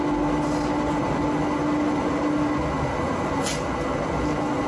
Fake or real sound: real